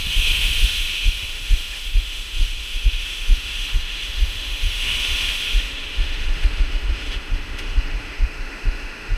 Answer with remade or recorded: remade